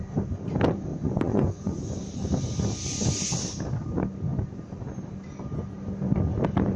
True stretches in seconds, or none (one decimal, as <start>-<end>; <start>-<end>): 0.0-0.9; 1.8-6.8